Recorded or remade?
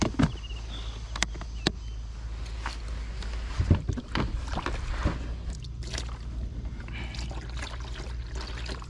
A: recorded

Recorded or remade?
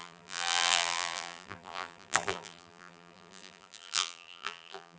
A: remade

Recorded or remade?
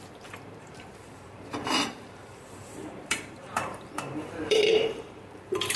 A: remade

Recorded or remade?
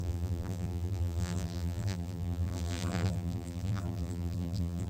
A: remade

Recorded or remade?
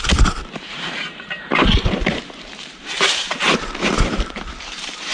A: remade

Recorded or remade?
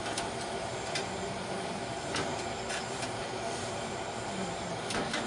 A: remade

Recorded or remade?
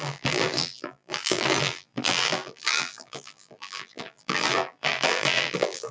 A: remade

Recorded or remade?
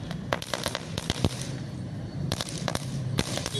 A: remade